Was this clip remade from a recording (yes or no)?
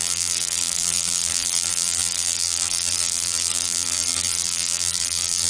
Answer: yes